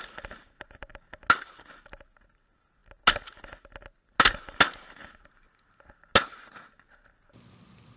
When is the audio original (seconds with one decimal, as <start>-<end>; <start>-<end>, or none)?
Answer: 0.0-8.0